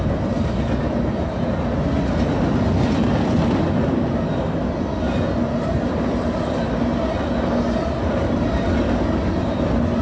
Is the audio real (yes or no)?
yes